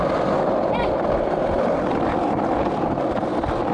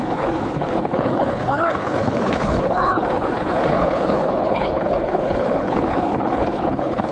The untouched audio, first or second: first